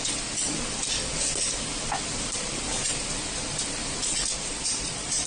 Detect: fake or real fake